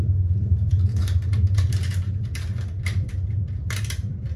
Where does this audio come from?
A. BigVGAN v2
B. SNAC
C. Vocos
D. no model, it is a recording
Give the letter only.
A